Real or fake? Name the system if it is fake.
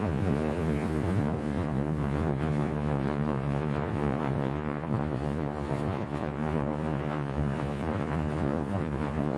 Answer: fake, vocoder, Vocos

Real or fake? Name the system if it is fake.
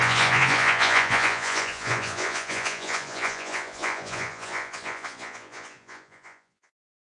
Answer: fake, vocoder, Vocos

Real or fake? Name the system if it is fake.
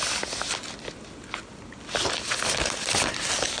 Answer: real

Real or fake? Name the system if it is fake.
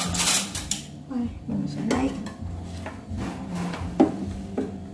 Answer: real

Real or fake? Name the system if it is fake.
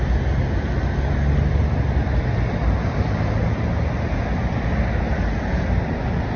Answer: real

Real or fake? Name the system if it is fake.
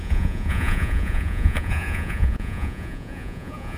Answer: fake, vocoder, Vocos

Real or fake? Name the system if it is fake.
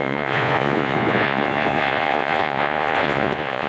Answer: fake, vocoder, Vocos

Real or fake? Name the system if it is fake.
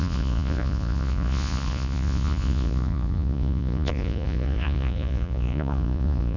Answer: fake, vocoder, Vocos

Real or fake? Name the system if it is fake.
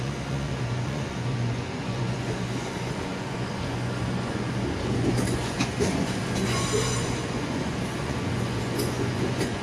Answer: fake, vocoder, Vocos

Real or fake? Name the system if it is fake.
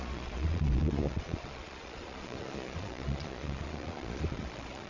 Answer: fake, vocoder, Vocos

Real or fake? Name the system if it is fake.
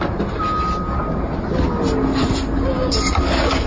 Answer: real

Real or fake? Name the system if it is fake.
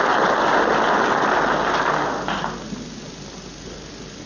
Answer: real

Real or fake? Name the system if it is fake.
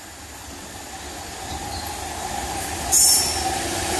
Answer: real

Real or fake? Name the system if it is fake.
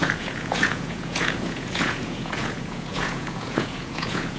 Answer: fake, vocoder, Vocos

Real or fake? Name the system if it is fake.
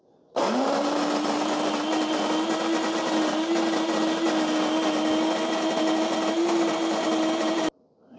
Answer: real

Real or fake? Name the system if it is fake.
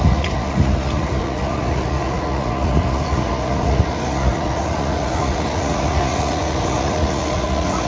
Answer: fake, vocoder, Vocos